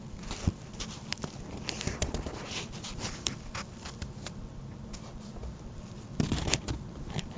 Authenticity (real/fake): fake